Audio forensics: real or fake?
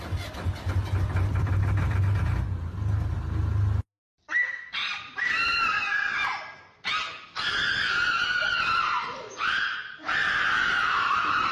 real